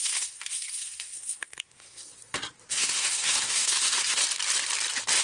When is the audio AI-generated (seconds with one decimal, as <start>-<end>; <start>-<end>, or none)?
0.0-2.1; 2.7-4.2